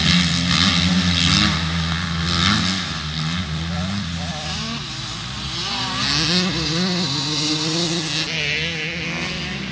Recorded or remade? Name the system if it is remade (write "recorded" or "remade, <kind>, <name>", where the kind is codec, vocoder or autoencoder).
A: recorded